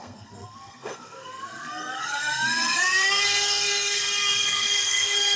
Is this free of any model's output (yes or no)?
no